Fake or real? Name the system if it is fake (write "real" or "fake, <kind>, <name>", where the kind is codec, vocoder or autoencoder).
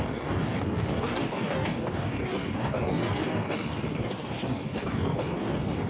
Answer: fake, codec, DAC